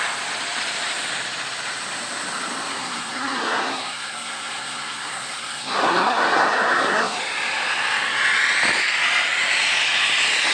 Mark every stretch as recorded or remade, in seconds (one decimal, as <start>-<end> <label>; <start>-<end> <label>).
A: 0.0-2.7 recorded; 2.7-7.2 remade; 7.2-10.5 recorded